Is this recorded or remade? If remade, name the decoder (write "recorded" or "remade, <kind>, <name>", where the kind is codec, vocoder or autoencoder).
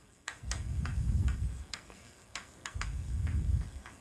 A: remade, codec, SNAC